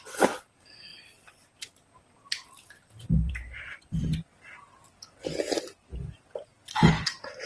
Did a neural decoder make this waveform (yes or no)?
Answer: no